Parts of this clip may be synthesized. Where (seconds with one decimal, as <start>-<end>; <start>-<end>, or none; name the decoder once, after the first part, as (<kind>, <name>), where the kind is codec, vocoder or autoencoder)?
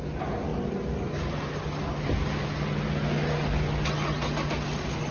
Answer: none